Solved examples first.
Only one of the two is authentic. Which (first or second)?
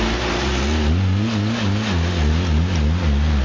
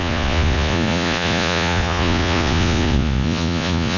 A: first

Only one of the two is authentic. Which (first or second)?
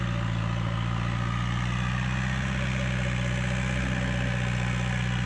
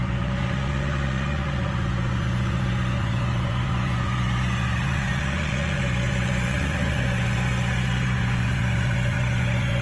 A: first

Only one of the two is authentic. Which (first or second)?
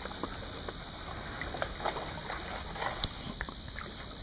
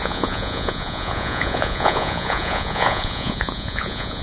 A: first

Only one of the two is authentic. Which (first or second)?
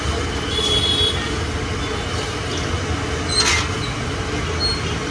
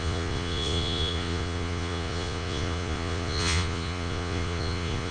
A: first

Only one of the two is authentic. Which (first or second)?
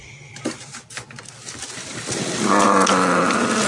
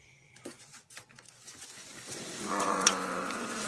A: first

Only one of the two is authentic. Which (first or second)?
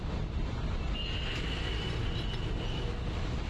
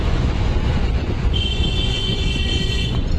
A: first